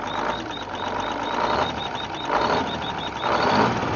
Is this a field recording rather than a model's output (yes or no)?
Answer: yes